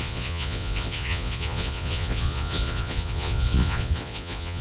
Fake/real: fake